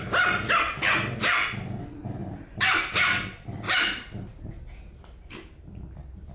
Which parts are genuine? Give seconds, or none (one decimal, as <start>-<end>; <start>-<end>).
0.0-1.3; 1.8-2.2